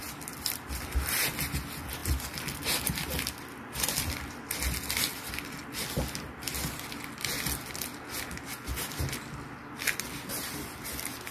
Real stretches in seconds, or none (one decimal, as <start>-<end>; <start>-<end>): 0.0-11.3